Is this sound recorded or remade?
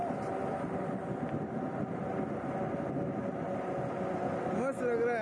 recorded